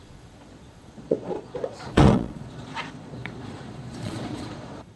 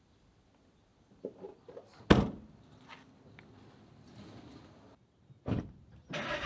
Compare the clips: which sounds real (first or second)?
second